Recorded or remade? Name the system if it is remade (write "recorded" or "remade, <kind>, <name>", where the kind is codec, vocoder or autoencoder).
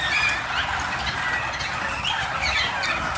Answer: recorded